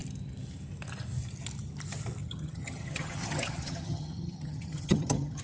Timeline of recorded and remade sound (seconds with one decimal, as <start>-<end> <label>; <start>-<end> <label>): 0.0-2.2 recorded; 2.2-5.4 remade